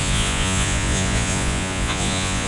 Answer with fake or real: fake